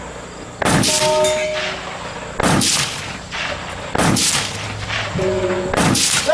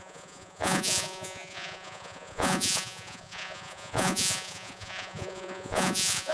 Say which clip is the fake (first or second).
second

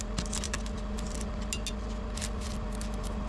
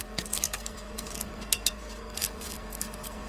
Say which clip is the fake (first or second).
second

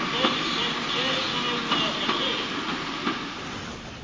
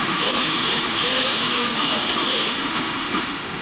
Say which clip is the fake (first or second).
second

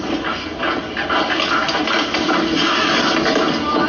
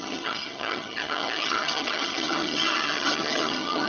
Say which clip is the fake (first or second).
second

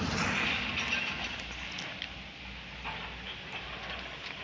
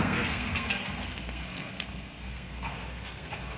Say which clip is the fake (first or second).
second